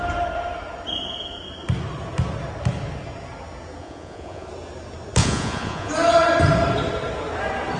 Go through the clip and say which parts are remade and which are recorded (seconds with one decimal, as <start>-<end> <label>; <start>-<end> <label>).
0.0-3.8 recorded; 3.8-4.5 remade; 4.5-5.2 recorded; 5.2-5.9 remade; 5.9-7.8 recorded